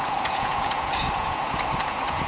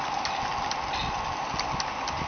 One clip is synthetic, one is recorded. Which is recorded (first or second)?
second